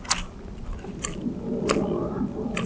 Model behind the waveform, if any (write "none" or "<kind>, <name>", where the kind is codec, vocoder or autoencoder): none